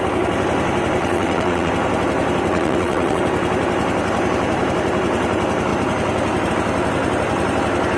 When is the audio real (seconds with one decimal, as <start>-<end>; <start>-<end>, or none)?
0.0-1.0; 1.7-2.5; 3.2-8.0